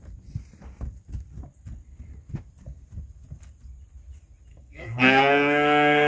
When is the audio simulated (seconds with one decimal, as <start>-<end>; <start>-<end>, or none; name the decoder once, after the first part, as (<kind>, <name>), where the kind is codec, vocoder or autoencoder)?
4.5-6.1 (codec, SNAC)